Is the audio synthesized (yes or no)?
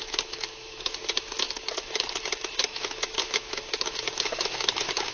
yes